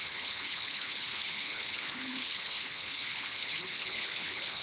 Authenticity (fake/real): fake